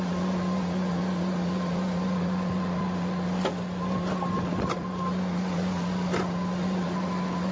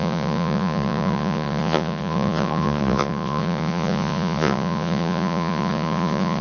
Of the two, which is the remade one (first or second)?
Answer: second